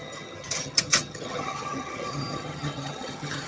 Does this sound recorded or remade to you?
remade